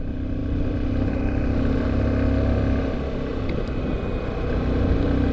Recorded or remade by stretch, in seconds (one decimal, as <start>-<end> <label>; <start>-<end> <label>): 0.0-5.3 recorded

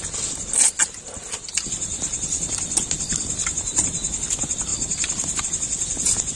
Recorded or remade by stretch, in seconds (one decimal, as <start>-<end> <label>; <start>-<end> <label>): 0.0-6.4 recorded

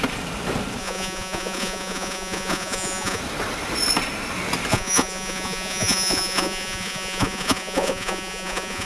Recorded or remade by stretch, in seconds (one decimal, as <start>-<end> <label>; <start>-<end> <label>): 0.0-0.8 recorded; 0.8-3.2 remade; 3.2-4.7 recorded; 4.7-8.9 remade

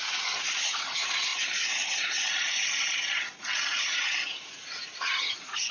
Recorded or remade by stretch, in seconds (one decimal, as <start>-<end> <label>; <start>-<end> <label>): 0.0-5.7 remade

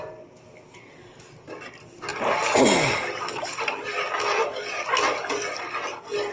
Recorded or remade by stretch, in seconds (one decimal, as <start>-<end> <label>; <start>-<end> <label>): 0.0-6.3 recorded

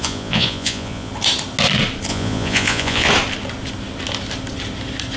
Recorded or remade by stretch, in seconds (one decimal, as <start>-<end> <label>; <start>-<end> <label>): 0.0-1.1 remade; 1.1-2.1 recorded; 2.1-3.1 remade; 3.1-5.2 recorded

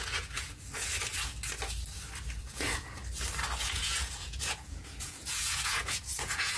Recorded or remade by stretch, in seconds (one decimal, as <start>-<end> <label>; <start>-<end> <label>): 0.0-0.9 remade; 0.9-2.4 recorded; 2.4-3.0 remade; 3.0-3.6 recorded; 3.6-6.6 remade